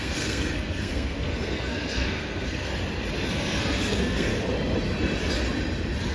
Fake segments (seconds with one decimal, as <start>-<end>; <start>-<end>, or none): 0.0-2.7; 3.3-4.3